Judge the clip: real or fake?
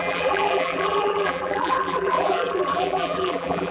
fake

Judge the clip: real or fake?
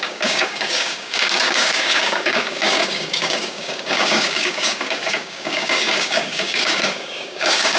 fake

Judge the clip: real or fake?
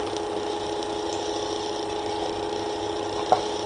real